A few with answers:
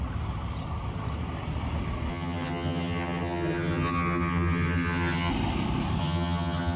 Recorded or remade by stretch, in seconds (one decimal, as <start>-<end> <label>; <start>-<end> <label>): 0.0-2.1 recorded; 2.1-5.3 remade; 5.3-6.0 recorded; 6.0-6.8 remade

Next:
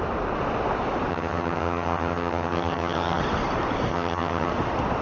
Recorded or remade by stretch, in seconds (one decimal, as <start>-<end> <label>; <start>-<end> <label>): 0.0-1.1 recorded; 1.1-3.2 remade; 3.2-3.9 recorded; 3.9-4.5 remade; 4.5-5.0 recorded

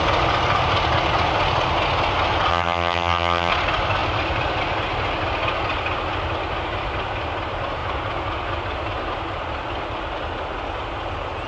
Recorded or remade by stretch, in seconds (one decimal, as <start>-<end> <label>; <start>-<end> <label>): 0.0-2.5 recorded; 2.5-3.5 remade; 3.5-11.5 recorded

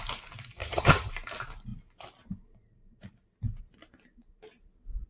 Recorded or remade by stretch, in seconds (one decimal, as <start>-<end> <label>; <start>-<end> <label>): 0.0-0.6 recorded; 0.6-1.1 remade; 1.1-5.1 recorded

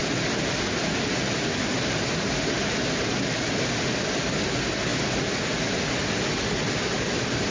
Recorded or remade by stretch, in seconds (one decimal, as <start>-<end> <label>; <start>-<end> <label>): 0.0-7.5 recorded